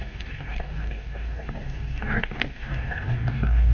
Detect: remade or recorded remade